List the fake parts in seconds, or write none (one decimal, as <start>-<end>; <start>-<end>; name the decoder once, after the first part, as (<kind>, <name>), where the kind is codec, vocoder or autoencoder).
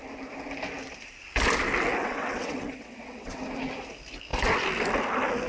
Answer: 2.0-3.4 (vocoder, WaveNeXt)